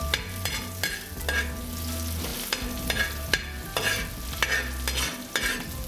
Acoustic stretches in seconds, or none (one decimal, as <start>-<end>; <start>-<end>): 0.0-5.9